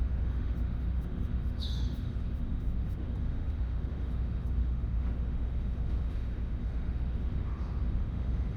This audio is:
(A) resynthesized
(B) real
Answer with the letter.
A